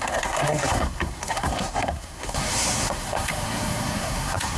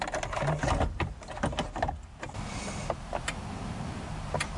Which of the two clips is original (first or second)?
second